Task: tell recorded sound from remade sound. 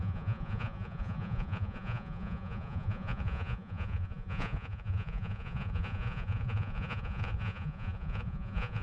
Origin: remade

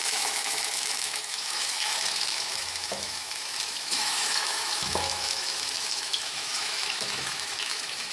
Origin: remade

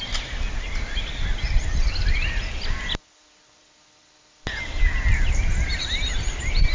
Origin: recorded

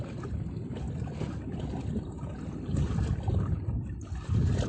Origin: recorded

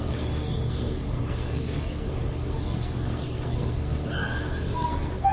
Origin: remade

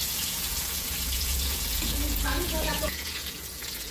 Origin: remade